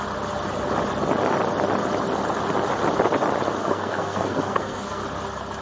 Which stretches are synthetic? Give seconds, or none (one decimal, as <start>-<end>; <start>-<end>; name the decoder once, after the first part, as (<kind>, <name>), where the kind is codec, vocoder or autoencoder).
3.6-5.0 (codec, SNAC)